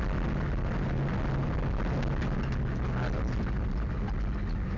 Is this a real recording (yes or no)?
yes